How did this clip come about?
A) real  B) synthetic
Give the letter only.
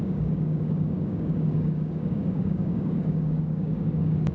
B